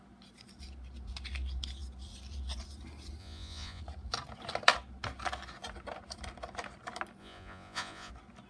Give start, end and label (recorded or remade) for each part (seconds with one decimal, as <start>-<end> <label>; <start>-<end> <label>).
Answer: 0.0-3.2 recorded; 3.2-3.8 remade; 3.8-7.2 recorded; 7.2-8.1 remade; 8.1-8.5 recorded

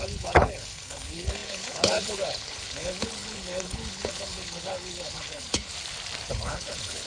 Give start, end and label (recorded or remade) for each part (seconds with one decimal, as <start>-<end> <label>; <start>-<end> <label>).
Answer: 0.0-5.7 remade; 5.7-6.3 recorded; 6.3-7.1 remade

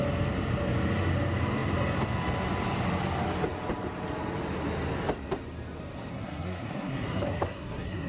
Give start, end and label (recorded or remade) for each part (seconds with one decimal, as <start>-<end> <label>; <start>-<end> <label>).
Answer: 0.0-6.1 recorded; 6.1-8.1 remade

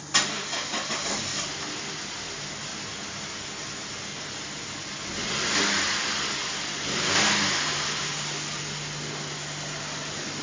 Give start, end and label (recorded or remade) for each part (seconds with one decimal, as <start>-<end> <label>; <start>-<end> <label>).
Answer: 0.0-10.4 recorded

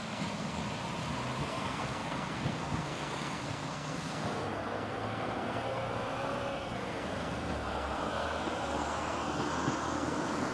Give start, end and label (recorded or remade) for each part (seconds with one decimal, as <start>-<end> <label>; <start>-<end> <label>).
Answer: 0.0-0.6 remade; 0.6-1.4 recorded; 1.4-10.5 remade

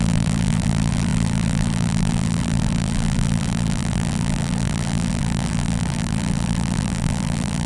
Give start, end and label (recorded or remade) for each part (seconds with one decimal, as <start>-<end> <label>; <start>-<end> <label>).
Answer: 0.0-7.7 remade

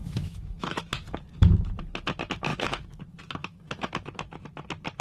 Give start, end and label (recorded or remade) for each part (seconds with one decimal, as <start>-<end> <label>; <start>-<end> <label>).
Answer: 0.0-0.8 remade; 0.8-2.5 recorded; 2.5-3.0 remade; 3.0-3.4 recorded; 3.4-3.9 remade; 3.9-5.0 recorded

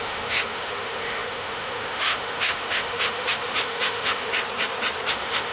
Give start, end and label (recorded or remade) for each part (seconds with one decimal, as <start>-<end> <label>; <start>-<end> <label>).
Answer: 0.0-4.3 remade; 4.3-5.1 recorded; 5.1-5.5 remade